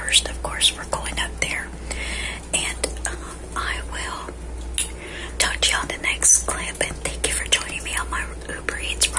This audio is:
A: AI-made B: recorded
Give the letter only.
B